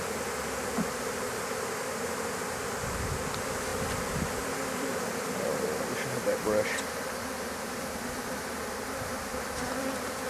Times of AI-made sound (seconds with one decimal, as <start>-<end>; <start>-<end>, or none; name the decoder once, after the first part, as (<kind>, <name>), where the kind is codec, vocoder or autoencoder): 3.7-4.9 (vocoder, BigVGAN v2)